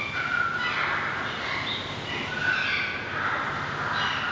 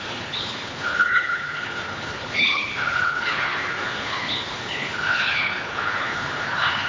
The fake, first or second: second